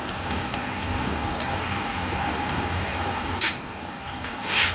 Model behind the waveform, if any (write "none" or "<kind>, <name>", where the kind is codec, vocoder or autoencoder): codec, DAC